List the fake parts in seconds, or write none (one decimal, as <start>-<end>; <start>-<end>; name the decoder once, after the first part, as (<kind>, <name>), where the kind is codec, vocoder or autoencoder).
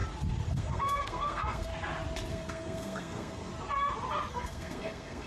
0.5-1.7 (codec, SNAC); 2.3-3.5; 4.3-5.3